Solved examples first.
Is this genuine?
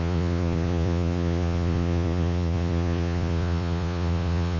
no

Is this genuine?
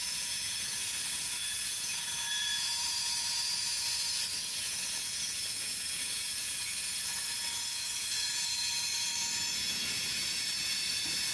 no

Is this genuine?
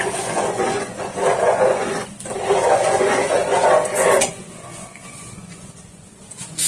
no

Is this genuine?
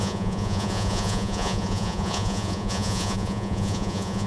no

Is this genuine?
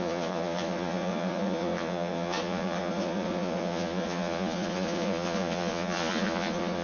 no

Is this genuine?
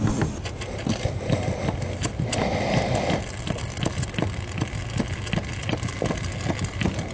yes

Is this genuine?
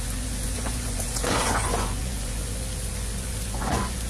no